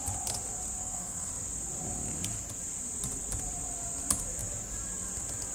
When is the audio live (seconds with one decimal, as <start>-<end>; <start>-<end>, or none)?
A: 0.0-0.8; 1.3-5.5